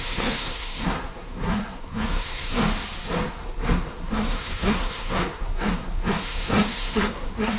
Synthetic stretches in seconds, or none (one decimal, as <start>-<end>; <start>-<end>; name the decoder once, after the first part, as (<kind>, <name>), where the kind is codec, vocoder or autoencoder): 0.0-2.6 (codec, SNAC); 3.3-7.6